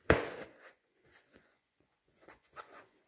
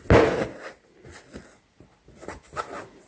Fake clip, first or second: first